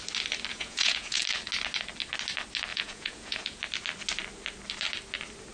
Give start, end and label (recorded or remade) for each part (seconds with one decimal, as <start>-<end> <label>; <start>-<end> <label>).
0.0-0.5 recorded; 0.5-1.2 remade; 1.2-2.7 recorded; 2.7-3.6 remade; 3.6-5.5 recorded